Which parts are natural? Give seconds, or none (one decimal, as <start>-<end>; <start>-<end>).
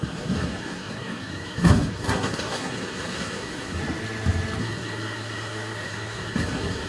3.8-4.6